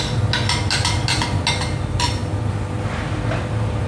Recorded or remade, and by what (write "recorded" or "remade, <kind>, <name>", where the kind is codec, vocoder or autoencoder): recorded